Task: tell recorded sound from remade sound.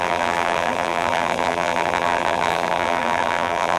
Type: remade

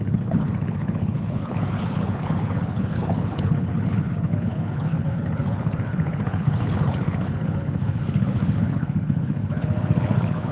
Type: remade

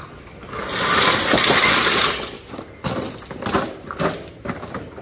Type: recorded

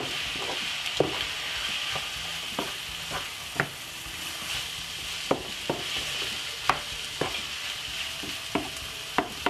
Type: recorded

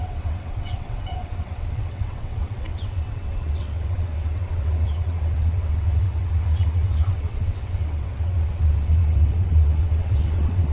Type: remade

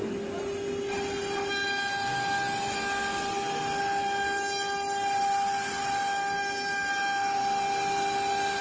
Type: recorded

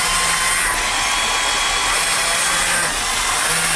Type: recorded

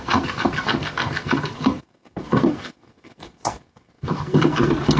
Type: remade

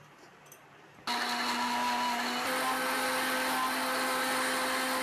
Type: recorded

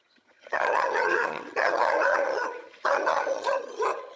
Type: remade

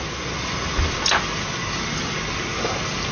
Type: recorded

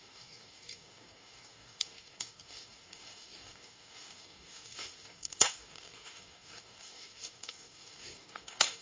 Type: remade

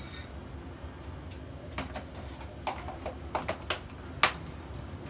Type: recorded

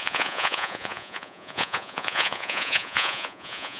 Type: remade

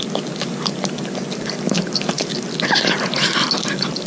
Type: recorded